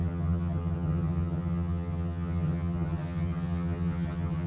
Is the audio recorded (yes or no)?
no